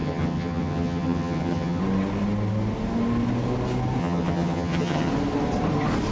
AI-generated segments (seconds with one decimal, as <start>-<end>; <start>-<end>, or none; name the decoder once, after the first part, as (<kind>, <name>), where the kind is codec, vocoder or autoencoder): 0.0-1.8 (vocoder, HiFi-GAN); 4.0-5.1